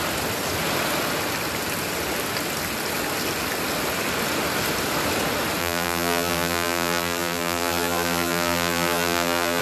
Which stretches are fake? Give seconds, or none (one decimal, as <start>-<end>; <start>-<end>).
5.6-9.6